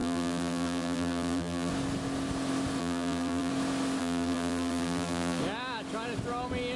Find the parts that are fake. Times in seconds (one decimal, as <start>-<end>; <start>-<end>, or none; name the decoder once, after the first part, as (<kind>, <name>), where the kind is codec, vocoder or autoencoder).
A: 0.0-1.7 (vocoder, BigVGAN v2); 2.8-3.5; 4.0-5.4

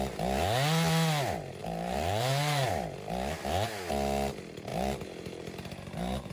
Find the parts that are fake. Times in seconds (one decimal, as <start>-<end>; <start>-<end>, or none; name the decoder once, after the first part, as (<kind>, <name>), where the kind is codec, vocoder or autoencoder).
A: 1.6-2.7 (vocoder, BigVGAN v2); 4.7-6.3